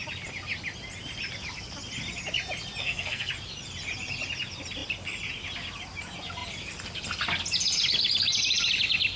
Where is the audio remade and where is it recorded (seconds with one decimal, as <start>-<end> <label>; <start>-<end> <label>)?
0.0-2.8 recorded; 2.8-3.3 remade; 3.3-9.2 recorded

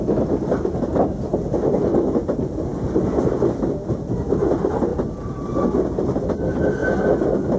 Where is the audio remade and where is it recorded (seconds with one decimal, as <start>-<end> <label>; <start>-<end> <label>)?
0.0-1.3 recorded; 1.3-1.8 remade; 1.8-4.9 recorded; 4.9-5.5 remade; 5.5-7.6 recorded

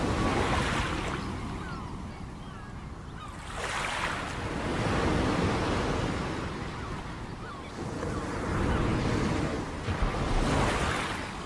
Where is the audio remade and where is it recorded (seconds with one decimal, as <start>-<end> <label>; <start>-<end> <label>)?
0.0-11.5 recorded

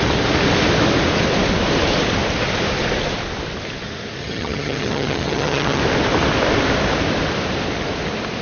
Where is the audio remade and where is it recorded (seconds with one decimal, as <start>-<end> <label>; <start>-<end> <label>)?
0.0-4.2 recorded; 4.2-5.8 remade; 5.8-8.4 recorded

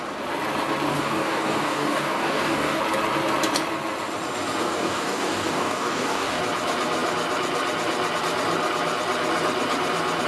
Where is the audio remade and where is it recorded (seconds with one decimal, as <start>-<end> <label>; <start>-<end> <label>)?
0.0-0.9 recorded; 0.9-2.8 remade; 2.8-4.6 recorded; 4.6-6.4 remade; 6.4-10.3 recorded